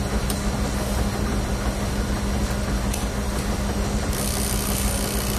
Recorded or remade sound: recorded